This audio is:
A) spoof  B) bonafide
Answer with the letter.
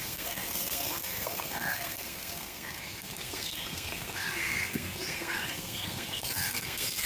A